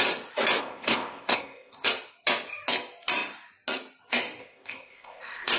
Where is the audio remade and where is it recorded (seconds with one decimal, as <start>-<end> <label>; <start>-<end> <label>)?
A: 0.0-0.6 recorded; 0.6-1.9 remade; 1.9-4.4 recorded; 4.4-5.6 remade